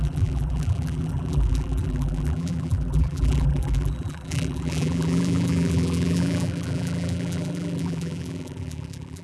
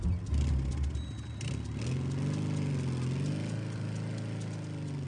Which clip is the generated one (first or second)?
first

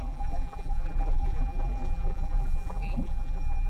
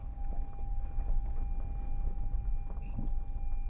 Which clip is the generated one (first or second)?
first